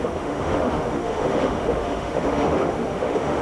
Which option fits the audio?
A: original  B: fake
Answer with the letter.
B